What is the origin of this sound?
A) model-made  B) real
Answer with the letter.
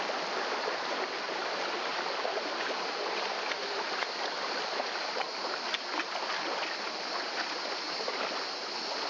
B